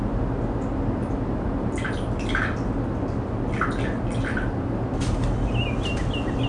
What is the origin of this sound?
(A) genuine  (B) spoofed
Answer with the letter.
A